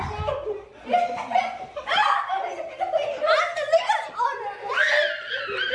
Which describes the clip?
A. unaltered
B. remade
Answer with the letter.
A